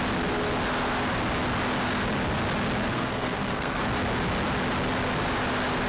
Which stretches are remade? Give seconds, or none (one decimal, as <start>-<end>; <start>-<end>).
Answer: 2.9-3.8